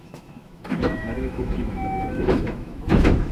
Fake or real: fake